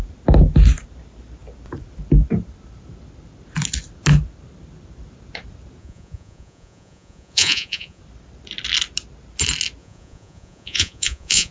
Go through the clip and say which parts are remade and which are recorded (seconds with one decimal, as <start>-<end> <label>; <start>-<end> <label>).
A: 0.0-5.8 recorded; 5.8-8.0 remade; 8.0-9.8 recorded; 9.8-11.5 remade